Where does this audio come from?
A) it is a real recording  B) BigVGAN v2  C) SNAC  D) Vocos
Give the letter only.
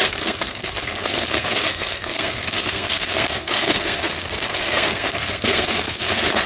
C